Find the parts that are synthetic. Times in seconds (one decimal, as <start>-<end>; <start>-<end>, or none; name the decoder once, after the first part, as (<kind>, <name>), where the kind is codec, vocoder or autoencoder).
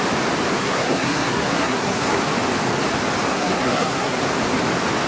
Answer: 0.6-2.2 (codec, SNAC); 3.3-4.2